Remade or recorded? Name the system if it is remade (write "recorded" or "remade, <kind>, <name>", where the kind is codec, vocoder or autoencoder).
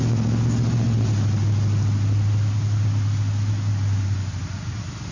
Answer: recorded